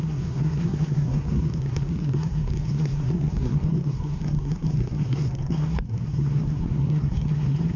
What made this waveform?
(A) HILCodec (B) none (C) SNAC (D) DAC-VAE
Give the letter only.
C